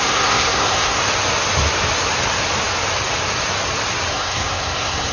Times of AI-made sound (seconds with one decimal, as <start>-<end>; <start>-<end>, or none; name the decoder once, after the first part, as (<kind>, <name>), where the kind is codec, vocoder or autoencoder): 0.0-1.0 (codec, SNAC); 4.1-5.1

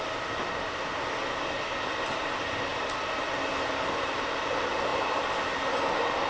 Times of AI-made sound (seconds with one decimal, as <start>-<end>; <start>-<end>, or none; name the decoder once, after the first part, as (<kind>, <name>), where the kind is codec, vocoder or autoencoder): none

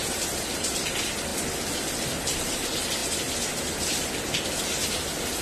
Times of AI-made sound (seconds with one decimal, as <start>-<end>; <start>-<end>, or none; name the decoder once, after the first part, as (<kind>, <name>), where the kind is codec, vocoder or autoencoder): none

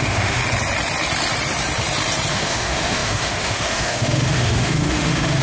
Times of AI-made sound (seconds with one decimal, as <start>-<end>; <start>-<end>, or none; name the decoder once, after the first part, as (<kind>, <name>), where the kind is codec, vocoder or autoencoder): 0.0-0.4 (autoencoder, DAC-VAE); 2.3-5.4

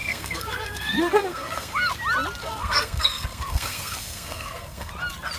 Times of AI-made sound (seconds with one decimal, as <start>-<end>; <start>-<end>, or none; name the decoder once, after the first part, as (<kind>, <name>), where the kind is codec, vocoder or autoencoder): 0.0-1.9 (codec, SNAC); 2.4-4.9

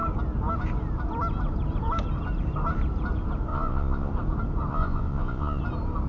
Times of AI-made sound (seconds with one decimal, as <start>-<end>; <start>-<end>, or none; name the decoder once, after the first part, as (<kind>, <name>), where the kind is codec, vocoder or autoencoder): 3.5-4.1 (vocoder, Vocos); 4.7-5.6